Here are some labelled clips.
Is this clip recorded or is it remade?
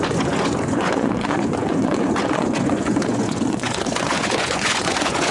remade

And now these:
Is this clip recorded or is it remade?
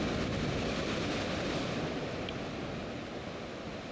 recorded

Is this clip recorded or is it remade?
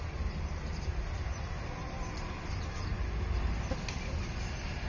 recorded